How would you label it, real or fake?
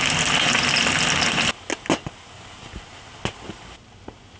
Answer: real